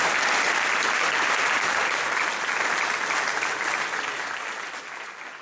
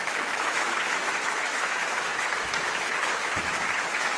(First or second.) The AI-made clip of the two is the second